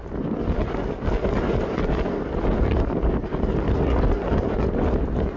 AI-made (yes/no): no